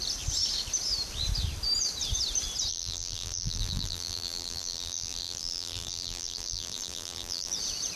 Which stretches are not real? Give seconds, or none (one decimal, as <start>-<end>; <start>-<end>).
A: 2.7-7.5